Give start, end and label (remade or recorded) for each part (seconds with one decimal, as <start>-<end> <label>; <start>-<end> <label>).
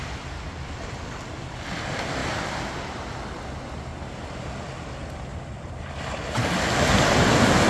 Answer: 0.0-3.9 recorded; 3.9-4.5 remade; 4.5-5.3 recorded; 5.3-6.5 remade; 6.5-7.7 recorded